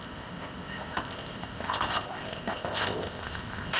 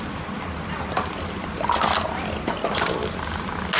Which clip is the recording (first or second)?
second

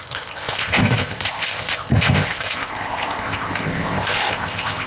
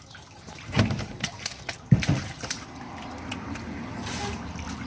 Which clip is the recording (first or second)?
second